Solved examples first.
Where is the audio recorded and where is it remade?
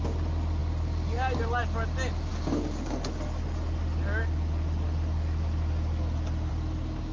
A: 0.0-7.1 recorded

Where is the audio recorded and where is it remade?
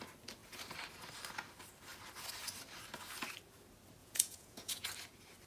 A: 0.0-4.0 recorded; 4.0-4.9 remade; 4.9-5.5 recorded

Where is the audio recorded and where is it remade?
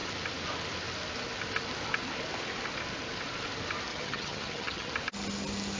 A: 0.0-3.9 recorded; 3.9-4.9 remade; 4.9-5.8 recorded